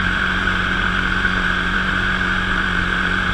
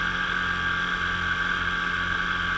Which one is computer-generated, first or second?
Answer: first